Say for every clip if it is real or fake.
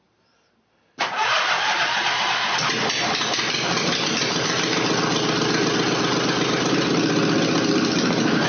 real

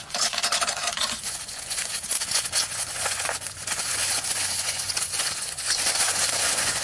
fake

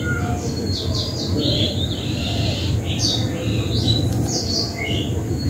real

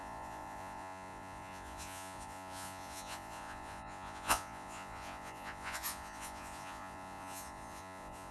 fake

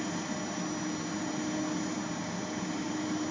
real